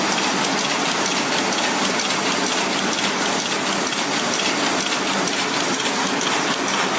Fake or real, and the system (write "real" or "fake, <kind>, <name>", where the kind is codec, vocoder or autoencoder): real